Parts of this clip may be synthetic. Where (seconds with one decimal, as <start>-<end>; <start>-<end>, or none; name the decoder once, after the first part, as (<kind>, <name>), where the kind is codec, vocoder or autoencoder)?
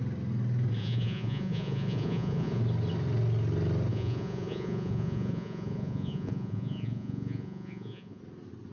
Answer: 0.8-2.6 (vocoder, Vocos); 3.9-8.2